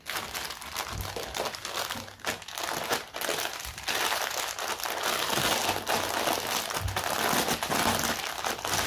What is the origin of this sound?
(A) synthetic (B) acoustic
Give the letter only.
B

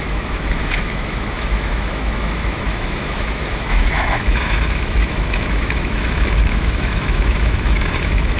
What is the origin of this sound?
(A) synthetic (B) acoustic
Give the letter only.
A